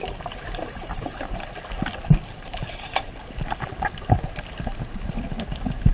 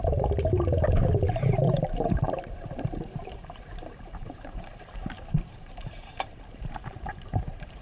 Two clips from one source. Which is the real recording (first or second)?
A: first